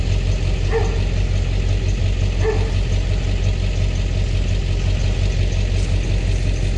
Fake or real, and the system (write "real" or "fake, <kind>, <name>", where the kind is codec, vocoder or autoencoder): real